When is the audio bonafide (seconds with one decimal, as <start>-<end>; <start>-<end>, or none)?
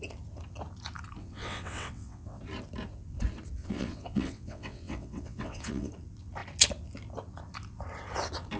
0.0-1.2; 2.4-3.6; 5.9-8.6